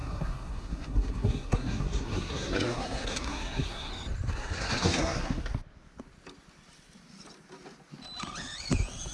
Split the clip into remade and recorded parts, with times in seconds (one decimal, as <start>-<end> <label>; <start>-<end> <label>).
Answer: 0.0-3.9 remade; 3.9-4.3 recorded; 4.3-5.4 remade; 5.4-9.1 recorded